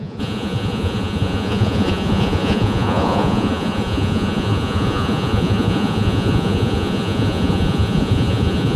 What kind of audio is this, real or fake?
fake